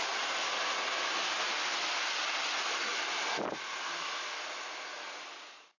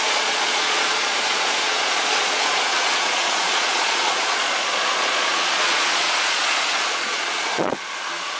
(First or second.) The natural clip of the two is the first